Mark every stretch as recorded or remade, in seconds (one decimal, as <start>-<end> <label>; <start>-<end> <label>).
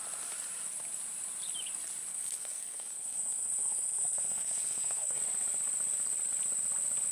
0.0-2.1 recorded; 2.1-5.2 remade; 5.2-7.1 recorded